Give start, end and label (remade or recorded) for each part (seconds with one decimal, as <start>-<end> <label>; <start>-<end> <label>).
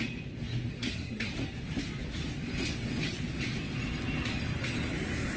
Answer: 0.0-0.7 recorded; 0.7-1.3 remade; 1.3-5.4 recorded